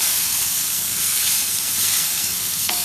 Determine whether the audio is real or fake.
fake